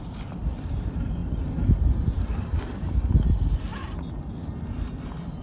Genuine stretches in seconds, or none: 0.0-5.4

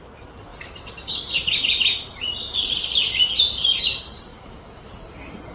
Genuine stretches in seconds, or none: 0.0-4.3; 4.9-5.5

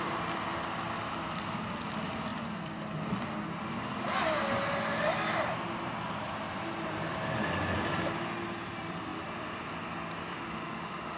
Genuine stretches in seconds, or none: 0.0-10.3

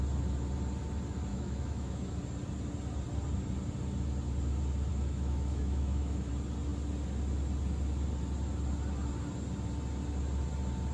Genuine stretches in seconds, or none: 0.0-1.3; 2.1-4.9; 6.3-10.9

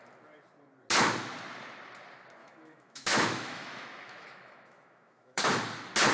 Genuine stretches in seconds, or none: 0.0-2.4; 5.5-6.1

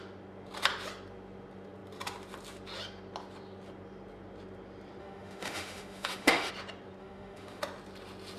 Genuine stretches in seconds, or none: 0.0-5.0; 6.5-7.0; 7.6-8.4